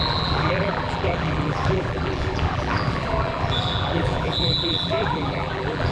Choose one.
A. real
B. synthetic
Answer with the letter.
B